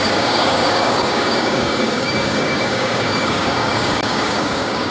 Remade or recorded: remade